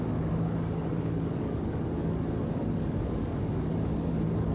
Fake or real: fake